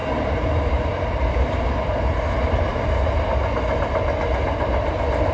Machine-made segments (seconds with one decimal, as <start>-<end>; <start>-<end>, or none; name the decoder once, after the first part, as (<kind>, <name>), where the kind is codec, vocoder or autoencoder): 0.0-2.2 (vocoder, BigVGAN v2)